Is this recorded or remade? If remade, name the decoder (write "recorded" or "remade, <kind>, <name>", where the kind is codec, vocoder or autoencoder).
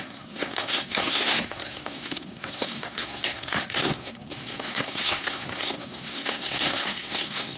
remade, codec, SNAC